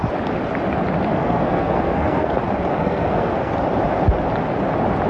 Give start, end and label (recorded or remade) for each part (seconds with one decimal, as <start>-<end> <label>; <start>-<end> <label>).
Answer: 0.0-1.2 recorded; 1.2-2.3 remade; 2.3-2.7 recorded; 2.7-3.5 remade; 3.5-5.1 recorded